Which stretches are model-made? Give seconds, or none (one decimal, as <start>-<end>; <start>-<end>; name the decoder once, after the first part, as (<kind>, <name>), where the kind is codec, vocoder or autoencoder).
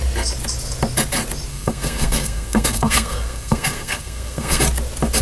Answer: 1.5-4.6 (codec, SNAC)